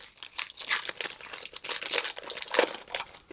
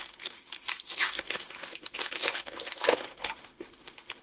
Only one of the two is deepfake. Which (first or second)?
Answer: second